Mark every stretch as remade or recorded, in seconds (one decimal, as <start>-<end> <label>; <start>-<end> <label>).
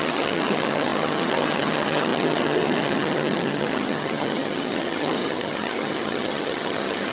0.0-7.1 remade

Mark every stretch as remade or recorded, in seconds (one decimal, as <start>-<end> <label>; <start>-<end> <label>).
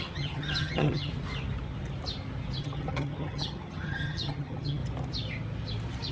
0.0-1.1 remade; 1.1-2.6 recorded; 2.6-4.8 remade; 4.8-6.1 recorded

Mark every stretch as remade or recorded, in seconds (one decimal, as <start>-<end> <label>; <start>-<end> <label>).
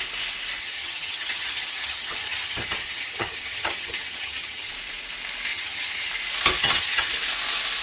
0.0-0.6 recorded; 0.6-4.7 remade; 4.7-5.5 recorded; 5.5-6.1 remade; 6.1-6.6 recorded; 6.6-7.1 remade; 7.1-7.8 recorded